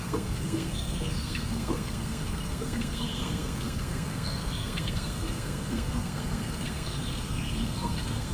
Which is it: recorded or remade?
remade